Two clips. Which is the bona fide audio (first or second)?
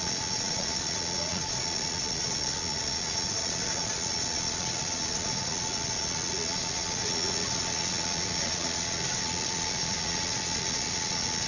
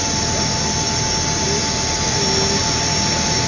second